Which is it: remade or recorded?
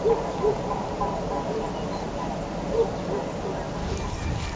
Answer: recorded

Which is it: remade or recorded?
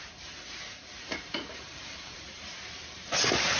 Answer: remade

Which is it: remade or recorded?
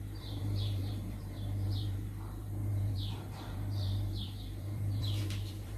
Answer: remade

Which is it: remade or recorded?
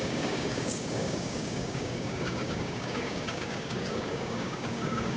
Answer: remade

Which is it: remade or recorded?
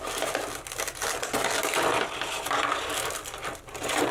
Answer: recorded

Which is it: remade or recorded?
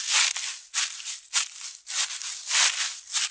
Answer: recorded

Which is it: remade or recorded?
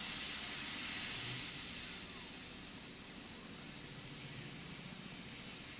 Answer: recorded